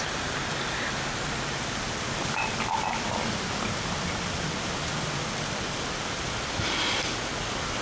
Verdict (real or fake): real